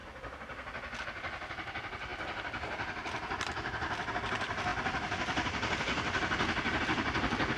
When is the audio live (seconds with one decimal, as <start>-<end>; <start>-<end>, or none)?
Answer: 0.0-7.6